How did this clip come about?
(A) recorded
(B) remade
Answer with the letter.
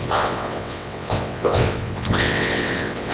B